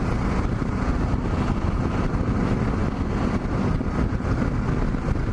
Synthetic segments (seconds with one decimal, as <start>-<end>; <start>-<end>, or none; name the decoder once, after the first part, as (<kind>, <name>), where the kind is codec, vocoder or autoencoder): none